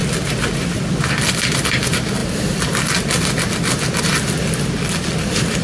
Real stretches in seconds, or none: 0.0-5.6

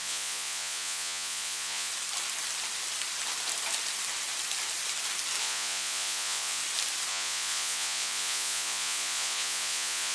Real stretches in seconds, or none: 1.9-5.4; 6.6-7.1

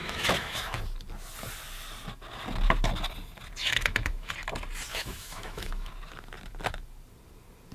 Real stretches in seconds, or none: 0.8-3.6; 4.3-4.9; 5.9-7.7

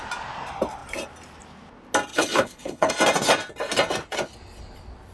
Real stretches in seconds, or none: 0.0-2.1; 2.9-5.1

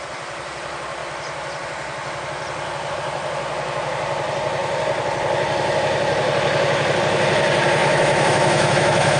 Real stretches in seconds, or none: 0.0-7.8